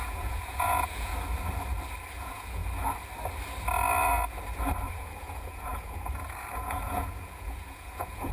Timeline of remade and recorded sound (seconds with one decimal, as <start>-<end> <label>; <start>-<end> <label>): 0.0-1.1 remade; 1.1-2.1 recorded; 2.1-2.6 remade; 2.6-4.9 recorded; 4.9-8.3 remade